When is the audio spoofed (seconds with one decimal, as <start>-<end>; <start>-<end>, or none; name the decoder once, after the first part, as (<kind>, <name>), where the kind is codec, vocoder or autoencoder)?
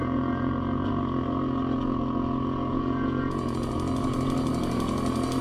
0.0-0.5 (vocoder, Vocos); 2.7-3.7